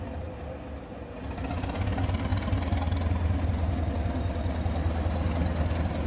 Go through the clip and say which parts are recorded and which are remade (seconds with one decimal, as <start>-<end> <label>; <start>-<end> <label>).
0.0-6.1 recorded